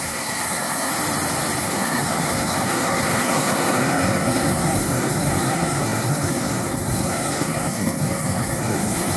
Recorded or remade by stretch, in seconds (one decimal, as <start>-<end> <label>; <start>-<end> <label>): 0.0-0.9 remade; 0.9-1.6 recorded; 1.6-9.2 remade